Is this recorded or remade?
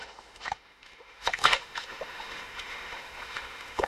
remade